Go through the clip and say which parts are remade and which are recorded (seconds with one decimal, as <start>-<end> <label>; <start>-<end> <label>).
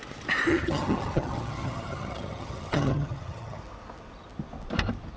0.0-0.5 recorded; 0.5-3.6 remade; 3.6-5.2 recorded